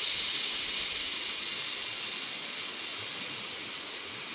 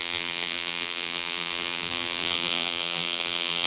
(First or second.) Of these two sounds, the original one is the first